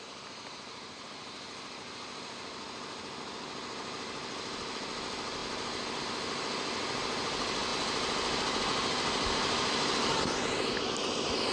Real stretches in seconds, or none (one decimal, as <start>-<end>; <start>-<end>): 0.0-11.5

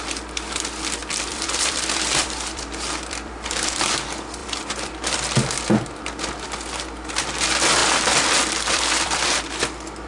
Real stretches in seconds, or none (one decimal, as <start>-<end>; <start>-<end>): 0.0-1.0; 3.9-4.4; 5.6-7.8; 9.5-10.1

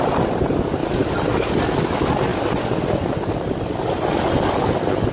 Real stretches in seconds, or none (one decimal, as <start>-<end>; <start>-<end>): 0.0-5.1

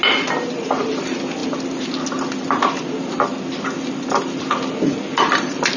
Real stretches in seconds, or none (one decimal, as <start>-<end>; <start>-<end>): 0.0-5.8

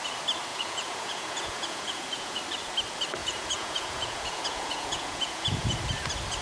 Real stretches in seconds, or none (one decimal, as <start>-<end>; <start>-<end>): 0.0-0.5; 2.4-3.2; 5.8-6.4

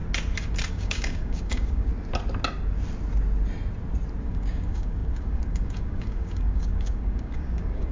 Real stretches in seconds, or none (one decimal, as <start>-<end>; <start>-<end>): 0.0-0.7; 1.9-4.2